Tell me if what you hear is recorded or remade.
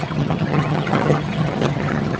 remade